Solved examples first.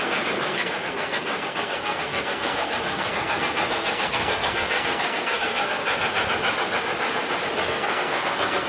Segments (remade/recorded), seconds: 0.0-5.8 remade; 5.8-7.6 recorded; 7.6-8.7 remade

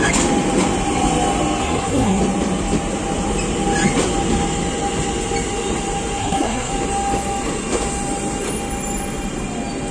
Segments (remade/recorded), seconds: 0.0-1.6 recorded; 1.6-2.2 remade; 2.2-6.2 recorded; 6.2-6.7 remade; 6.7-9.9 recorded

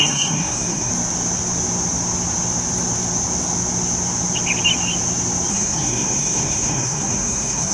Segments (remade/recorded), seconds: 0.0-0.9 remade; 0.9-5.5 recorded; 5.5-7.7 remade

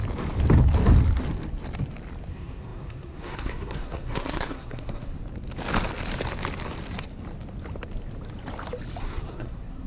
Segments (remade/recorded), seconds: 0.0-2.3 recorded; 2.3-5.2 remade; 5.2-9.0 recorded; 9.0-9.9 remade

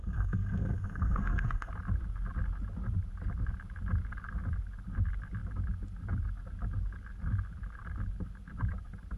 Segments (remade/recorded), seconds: 0.0-1.7 remade; 1.7-9.2 recorded

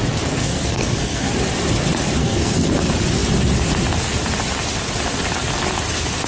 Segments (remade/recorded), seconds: 0.0-0.4 recorded; 0.4-1.3 remade; 1.3-2.2 recorded; 2.2-2.7 remade; 2.7-6.3 recorded